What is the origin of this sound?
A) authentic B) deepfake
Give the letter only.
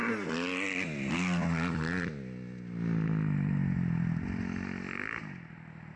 A